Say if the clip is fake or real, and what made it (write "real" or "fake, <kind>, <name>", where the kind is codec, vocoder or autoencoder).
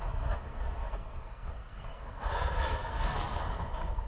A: fake, codec, SNAC